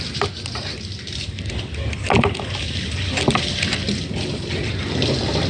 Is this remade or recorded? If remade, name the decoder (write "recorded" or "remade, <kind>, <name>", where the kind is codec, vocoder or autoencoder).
recorded